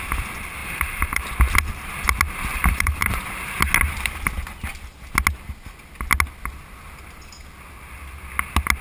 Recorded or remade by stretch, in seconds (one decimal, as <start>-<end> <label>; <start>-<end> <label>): 0.0-0.6 recorded; 0.6-1.2 remade; 1.2-2.5 recorded; 2.5-3.2 remade; 3.2-8.8 recorded